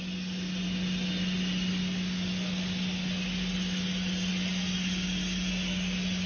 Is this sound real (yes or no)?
yes